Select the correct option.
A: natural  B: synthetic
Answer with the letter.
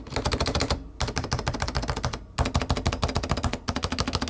A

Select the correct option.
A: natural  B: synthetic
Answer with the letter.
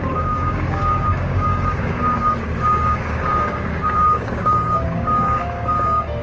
B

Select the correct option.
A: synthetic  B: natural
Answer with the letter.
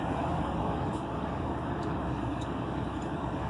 A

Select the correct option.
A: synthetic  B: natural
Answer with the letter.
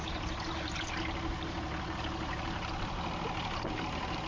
B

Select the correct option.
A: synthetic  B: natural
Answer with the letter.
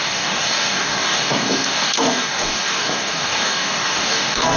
A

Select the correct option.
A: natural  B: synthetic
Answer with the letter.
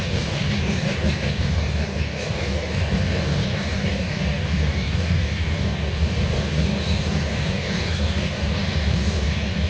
B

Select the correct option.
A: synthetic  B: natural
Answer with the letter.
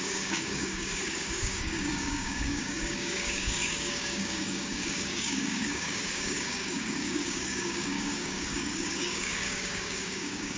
A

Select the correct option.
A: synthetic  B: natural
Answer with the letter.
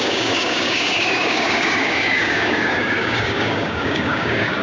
A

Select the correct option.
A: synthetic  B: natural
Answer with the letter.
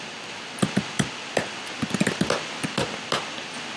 B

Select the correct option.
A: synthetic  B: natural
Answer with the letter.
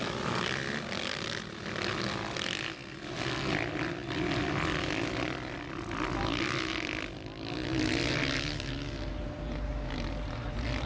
B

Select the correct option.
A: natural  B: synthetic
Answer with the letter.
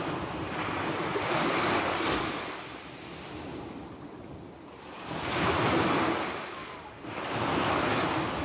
A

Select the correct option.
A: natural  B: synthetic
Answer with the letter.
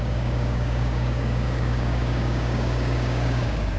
B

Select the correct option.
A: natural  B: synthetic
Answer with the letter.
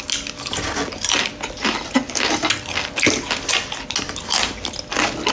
A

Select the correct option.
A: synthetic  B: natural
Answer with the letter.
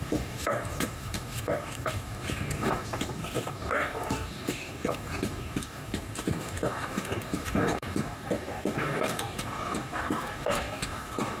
A